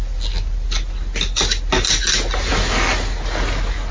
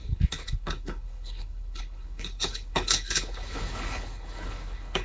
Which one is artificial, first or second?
second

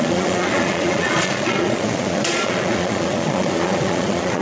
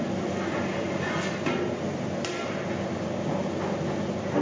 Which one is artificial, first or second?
first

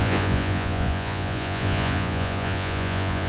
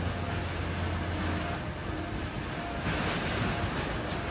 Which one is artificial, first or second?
first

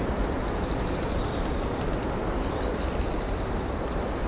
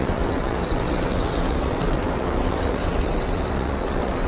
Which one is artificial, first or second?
second